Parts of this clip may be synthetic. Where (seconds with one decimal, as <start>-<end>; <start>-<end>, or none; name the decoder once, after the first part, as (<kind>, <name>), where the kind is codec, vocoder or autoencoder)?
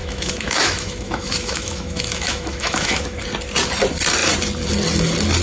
0.0-3.2 (autoencoder, DAC-VAE)